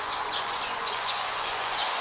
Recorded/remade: remade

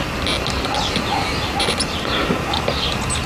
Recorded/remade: recorded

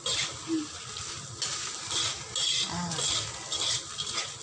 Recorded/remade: recorded